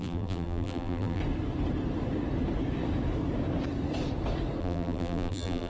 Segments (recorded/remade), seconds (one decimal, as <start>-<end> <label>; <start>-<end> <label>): 0.0-1.2 remade; 1.2-4.6 recorded; 4.6-5.7 remade